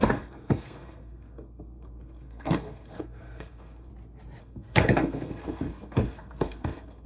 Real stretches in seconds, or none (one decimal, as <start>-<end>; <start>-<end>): 3.9-4.4